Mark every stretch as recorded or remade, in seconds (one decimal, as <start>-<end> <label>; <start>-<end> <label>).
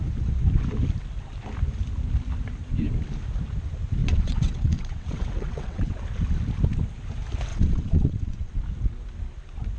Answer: 0.0-4.0 recorded; 4.0-5.9 remade; 5.9-7.5 recorded; 7.5-8.5 remade; 8.5-9.8 recorded